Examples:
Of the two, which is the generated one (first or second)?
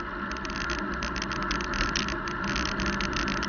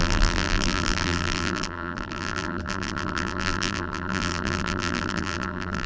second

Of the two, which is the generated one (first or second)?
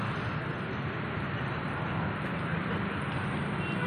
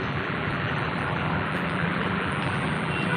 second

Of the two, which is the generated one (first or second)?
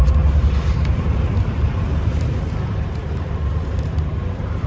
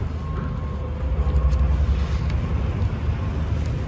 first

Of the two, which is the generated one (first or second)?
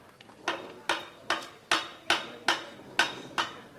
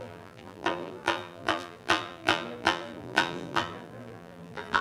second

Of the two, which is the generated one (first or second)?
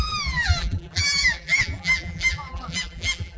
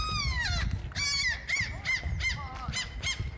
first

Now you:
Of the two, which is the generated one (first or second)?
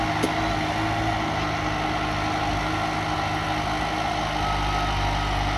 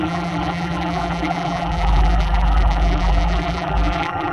second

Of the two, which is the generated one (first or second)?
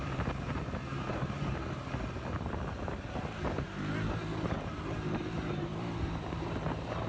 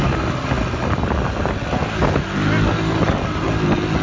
first